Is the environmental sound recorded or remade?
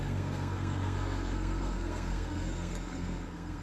remade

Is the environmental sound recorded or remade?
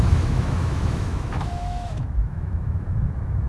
remade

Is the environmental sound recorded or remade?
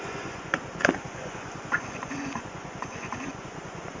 remade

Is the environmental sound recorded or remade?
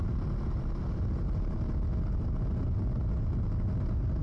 recorded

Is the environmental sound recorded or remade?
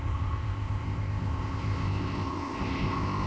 remade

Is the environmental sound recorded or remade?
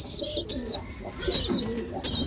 recorded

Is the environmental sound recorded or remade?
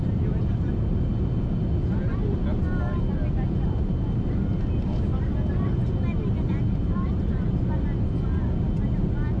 recorded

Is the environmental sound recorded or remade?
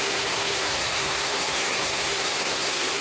remade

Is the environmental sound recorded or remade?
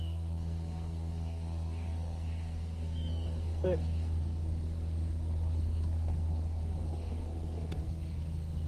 remade